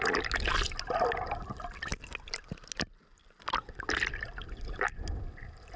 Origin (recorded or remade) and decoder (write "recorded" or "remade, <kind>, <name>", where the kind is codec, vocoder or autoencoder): recorded